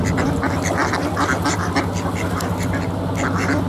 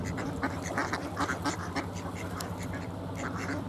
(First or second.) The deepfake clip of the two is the second